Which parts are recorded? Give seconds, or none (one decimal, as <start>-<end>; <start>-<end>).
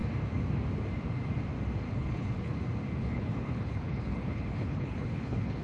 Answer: 0.0-1.9; 2.5-3.0